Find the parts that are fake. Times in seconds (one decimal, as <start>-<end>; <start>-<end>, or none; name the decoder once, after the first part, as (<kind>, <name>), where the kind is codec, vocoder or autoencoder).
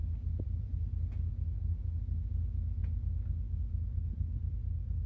none